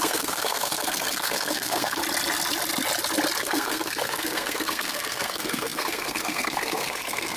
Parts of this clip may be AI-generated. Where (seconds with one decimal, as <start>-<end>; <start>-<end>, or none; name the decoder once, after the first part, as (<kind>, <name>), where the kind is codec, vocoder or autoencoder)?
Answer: 0.0-2.0 (codec, SNAC); 3.4-7.4